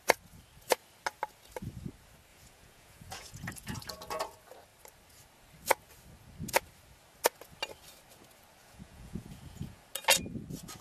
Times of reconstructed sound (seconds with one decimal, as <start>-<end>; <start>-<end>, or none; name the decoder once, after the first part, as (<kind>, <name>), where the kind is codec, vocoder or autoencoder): 2.3-3.5 (vocoder, Vocos); 8.6-9.8